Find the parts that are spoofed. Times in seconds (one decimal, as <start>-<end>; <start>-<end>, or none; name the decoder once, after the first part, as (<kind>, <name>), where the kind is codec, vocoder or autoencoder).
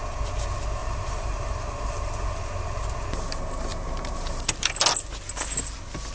0.8-2.4 (vocoder, BigVGAN v2); 3.7-4.8